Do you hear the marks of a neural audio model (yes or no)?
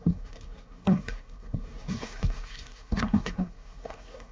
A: yes